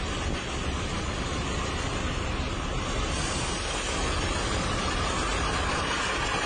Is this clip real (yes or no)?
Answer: yes